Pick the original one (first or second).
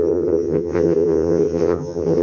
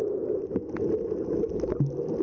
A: second